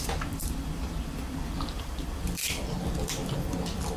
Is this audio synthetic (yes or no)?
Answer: yes